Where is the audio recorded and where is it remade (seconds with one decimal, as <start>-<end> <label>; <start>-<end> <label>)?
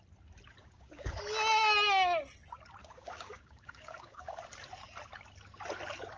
0.0-0.6 recorded; 0.6-1.2 remade; 1.2-2.8 recorded; 2.8-4.4 remade; 4.4-6.2 recorded